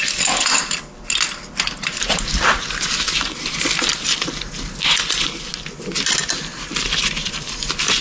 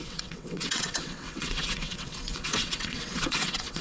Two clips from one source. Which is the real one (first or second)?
first